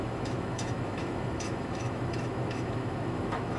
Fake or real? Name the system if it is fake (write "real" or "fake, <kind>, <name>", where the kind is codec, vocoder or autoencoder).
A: fake, autoencoder, DAC-VAE